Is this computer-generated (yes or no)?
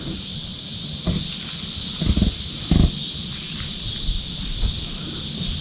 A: no